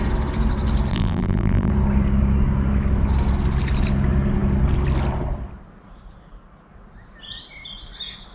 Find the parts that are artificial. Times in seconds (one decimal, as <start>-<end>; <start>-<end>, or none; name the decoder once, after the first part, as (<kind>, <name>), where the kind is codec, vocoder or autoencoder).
0.9-1.7 (vocoder, BigVGAN v2)